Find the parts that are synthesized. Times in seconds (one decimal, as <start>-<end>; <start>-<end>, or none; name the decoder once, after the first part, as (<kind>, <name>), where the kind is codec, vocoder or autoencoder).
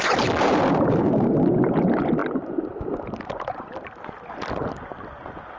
none